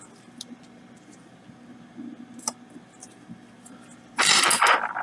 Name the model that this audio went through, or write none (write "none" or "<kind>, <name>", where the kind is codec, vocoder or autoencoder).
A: none